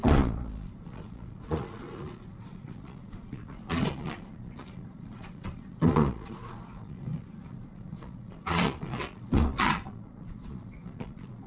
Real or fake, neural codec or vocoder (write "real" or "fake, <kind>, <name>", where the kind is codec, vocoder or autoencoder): fake, vocoder, Vocos